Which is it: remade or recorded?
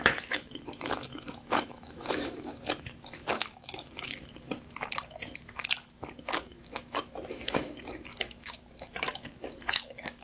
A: remade